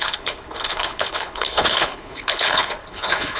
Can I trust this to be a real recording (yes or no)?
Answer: no